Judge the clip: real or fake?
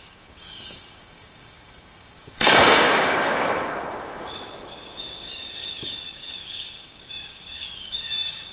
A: fake